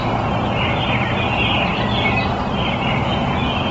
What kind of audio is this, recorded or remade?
recorded